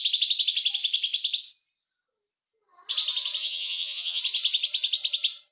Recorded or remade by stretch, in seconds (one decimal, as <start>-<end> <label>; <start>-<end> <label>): 0.0-3.4 recorded; 3.4-4.2 remade; 4.2-5.5 recorded